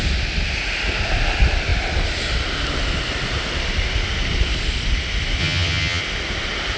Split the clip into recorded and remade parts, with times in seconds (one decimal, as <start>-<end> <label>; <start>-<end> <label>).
0.0-5.4 recorded; 5.4-6.0 remade; 6.0-6.8 recorded

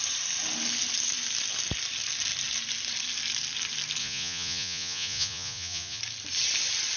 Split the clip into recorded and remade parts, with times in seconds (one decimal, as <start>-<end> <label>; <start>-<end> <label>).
0.0-4.0 recorded; 4.0-6.0 remade; 6.0-7.0 recorded

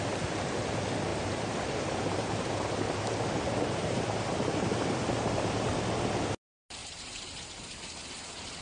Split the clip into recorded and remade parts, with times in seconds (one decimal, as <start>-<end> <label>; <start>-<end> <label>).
0.0-1.1 recorded; 1.1-4.7 remade; 4.7-6.8 recorded; 6.8-7.9 remade; 7.9-8.6 recorded

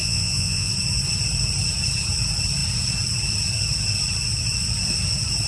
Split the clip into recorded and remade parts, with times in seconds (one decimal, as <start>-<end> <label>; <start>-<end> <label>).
0.0-0.7 remade; 0.7-5.5 recorded

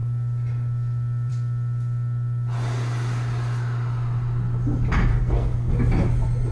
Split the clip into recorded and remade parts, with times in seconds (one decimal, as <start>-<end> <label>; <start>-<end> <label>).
0.0-5.1 recorded; 5.1-5.7 remade; 5.7-6.5 recorded

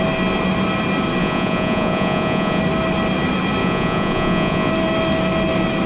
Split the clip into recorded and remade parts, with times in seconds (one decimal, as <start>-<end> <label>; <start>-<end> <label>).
0.0-1.2 recorded; 1.2-2.6 remade; 2.6-3.6 recorded; 3.6-4.7 remade; 4.7-5.9 recorded